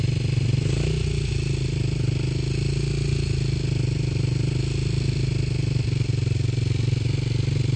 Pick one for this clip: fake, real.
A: real